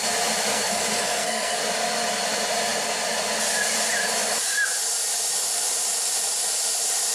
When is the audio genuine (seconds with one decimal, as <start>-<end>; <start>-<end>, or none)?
0.0-0.5; 1.6-7.1

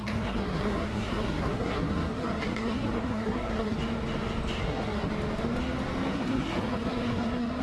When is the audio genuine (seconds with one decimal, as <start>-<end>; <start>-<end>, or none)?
3.8-4.6; 5.1-6.1